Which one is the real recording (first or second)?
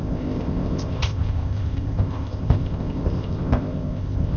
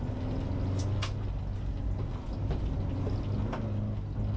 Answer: second